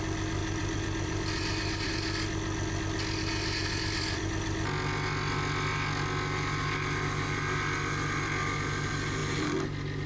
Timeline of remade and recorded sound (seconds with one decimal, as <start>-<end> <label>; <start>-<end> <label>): 0.0-0.4 recorded; 0.4-1.9 remade; 1.9-3.6 recorded; 3.6-4.3 remade; 4.3-9.2 recorded; 9.2-10.1 remade